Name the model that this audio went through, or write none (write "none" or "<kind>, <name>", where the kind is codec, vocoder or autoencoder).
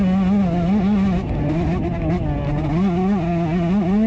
none